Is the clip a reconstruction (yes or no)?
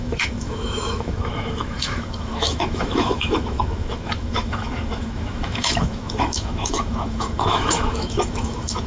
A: yes